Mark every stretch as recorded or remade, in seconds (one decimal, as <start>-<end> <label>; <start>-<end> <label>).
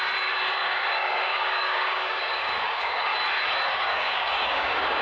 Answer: 0.0-0.6 recorded; 0.6-3.1 remade; 3.1-3.7 recorded; 3.7-5.0 remade